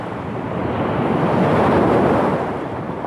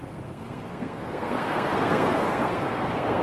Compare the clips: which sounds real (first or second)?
first